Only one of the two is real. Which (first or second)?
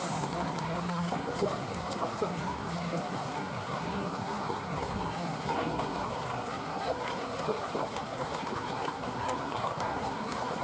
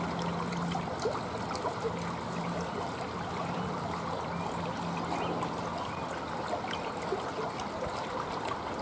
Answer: second